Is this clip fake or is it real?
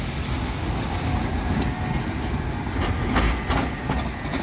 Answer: real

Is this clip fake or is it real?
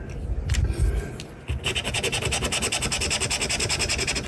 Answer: real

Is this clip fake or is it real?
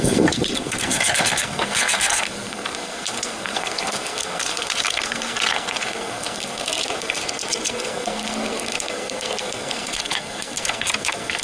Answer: fake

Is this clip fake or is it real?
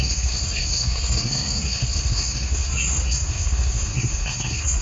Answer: fake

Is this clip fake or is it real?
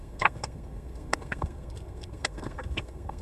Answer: fake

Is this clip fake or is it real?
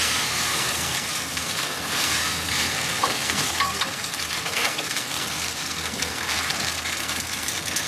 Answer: fake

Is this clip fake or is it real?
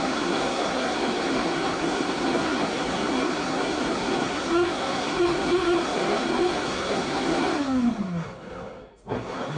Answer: fake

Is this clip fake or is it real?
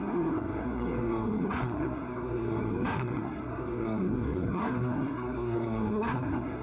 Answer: fake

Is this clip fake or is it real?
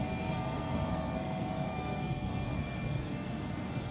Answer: fake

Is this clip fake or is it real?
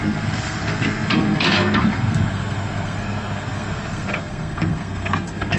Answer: fake